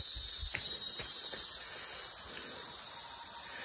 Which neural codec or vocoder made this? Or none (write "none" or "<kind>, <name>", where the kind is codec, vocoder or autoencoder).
none